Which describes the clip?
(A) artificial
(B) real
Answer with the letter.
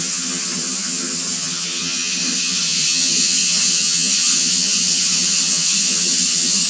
A